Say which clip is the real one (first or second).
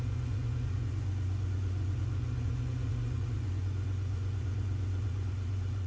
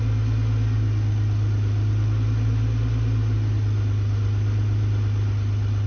second